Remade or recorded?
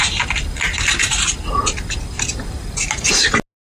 recorded